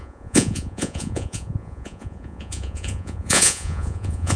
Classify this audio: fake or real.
fake